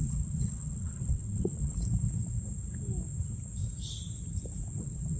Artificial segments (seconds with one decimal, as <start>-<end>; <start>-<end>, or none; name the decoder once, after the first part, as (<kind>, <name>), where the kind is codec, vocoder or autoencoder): 0.0-1.7 (vocoder, WaveNeXt); 4.8-5.2